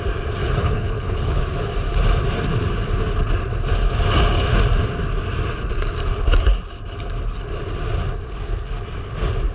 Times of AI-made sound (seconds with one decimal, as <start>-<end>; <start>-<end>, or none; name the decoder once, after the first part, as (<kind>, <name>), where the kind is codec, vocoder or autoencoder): 0.4-1.4 (codec, HILCodec)